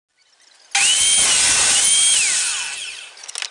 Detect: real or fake real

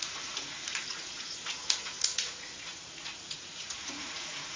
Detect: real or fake fake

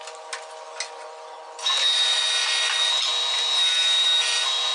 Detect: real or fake real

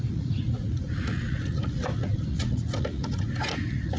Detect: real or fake fake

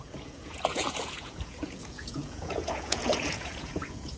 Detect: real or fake fake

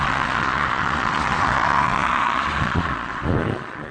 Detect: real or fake fake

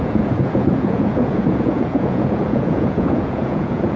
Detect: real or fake fake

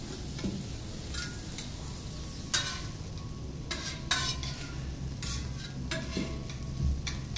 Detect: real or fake real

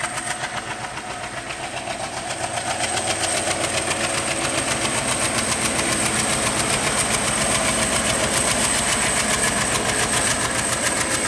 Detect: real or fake real